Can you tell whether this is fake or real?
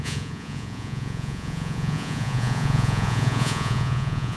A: fake